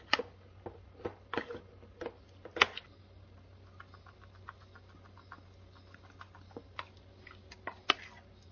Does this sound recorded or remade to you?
recorded